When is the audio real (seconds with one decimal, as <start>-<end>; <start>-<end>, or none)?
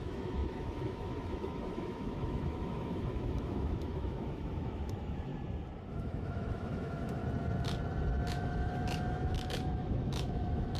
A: 5.3-5.9; 7.2-8.3